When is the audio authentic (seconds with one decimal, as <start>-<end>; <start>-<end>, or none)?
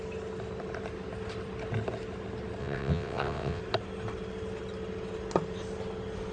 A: 0.0-2.6; 3.6-6.3